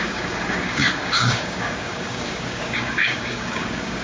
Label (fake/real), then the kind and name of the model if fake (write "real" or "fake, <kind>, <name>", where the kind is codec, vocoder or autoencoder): fake, codec, DAC